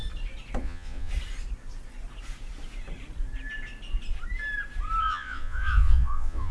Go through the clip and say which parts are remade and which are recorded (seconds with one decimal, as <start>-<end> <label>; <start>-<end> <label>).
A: 0.0-0.6 recorded; 0.6-1.1 remade; 1.1-5.0 recorded; 5.0-6.5 remade